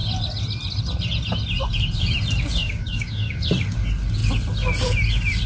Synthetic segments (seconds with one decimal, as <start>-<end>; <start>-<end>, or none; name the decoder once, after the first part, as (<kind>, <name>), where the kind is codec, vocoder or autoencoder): 2.6-3.4 (codec, DAC)